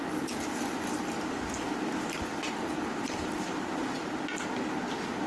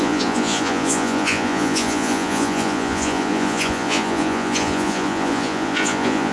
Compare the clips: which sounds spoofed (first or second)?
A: second